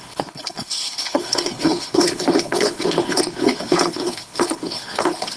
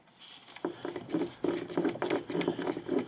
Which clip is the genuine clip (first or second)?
second